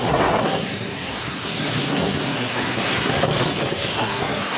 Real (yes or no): no